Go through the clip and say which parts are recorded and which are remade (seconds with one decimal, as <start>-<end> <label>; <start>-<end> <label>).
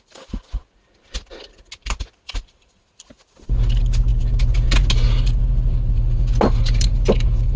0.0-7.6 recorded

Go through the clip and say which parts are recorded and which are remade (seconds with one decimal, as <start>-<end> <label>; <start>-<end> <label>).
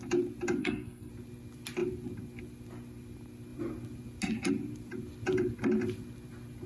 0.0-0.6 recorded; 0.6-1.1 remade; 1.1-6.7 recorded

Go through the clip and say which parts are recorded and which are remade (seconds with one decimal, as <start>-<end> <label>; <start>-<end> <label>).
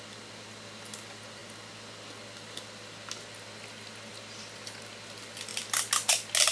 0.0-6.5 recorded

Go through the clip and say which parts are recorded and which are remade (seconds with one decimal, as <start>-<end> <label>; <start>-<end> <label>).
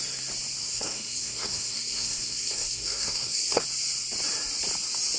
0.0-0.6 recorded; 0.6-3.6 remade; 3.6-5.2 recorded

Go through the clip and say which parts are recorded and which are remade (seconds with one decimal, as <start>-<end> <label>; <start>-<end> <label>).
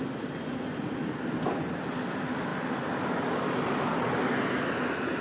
0.0-5.2 recorded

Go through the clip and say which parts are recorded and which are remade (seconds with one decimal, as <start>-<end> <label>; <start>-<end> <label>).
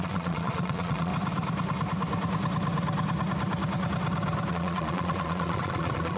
0.0-1.1 remade; 1.1-4.5 recorded; 4.5-6.2 remade